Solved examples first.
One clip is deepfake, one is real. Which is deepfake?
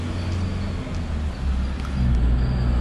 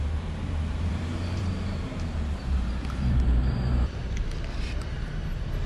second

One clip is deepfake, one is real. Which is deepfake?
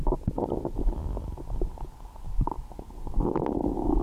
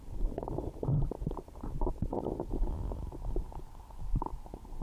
second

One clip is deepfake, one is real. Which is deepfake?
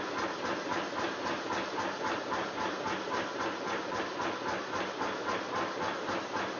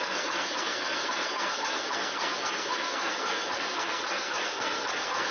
second